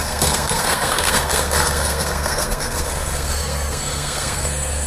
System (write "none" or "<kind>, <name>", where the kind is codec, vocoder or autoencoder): codec, SNAC